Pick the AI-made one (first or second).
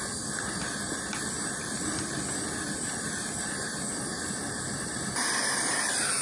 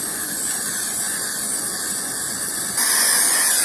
second